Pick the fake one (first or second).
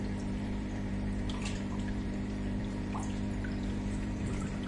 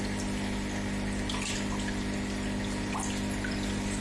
first